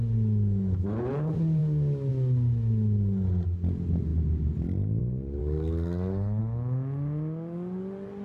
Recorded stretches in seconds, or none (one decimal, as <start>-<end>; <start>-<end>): 0.0-1.6; 2.1-5.4; 6.4-8.2